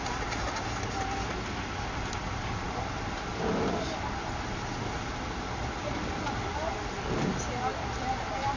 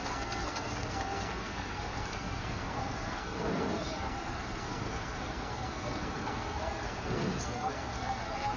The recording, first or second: first